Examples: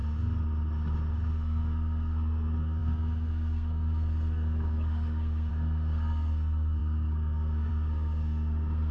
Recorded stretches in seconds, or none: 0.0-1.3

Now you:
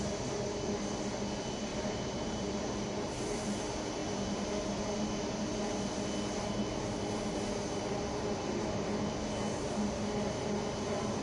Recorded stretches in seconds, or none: 0.0-1.7; 2.6-11.2

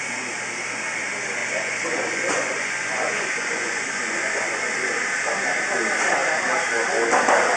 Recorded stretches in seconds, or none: 0.0-1.4; 5.0-7.6

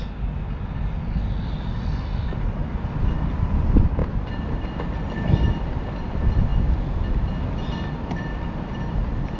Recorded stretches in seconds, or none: 0.0-9.4

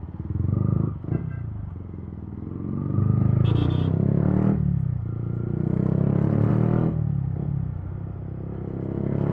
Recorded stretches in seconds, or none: 0.0-9.3

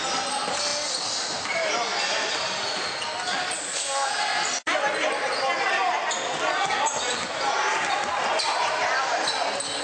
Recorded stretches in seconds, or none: 0.0-3.6; 4.1-9.8